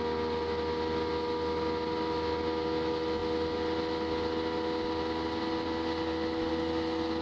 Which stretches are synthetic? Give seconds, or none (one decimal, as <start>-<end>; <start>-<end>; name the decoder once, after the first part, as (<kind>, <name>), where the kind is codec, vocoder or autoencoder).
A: none